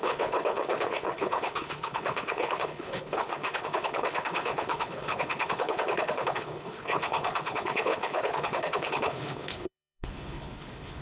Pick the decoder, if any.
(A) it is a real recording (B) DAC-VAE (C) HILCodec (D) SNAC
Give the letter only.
C